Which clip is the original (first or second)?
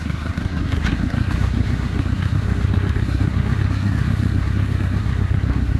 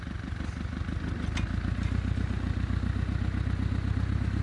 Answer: second